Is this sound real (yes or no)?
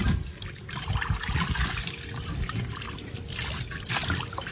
yes